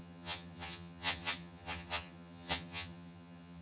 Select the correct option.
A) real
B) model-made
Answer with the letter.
B